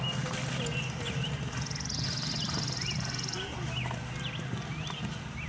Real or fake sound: real